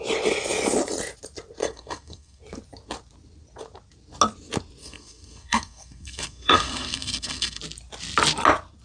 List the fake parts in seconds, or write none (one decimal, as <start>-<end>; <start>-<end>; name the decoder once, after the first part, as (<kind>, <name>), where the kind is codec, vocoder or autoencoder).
1.6-2.4 (codec, SNAC); 4.8-7.6